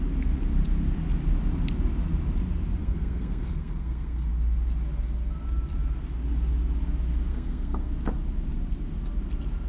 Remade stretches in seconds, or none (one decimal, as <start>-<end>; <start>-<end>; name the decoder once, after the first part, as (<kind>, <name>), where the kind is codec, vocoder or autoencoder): 2.8-4.3 (codec, SNAC); 7.3-7.9